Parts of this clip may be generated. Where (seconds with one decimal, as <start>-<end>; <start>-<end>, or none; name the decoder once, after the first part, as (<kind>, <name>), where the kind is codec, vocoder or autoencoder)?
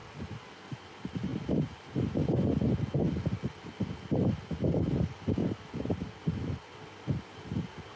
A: 1.3-2.5 (vocoder, BigVGAN v2); 5.4-7.2